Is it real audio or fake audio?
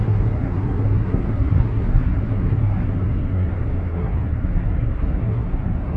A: fake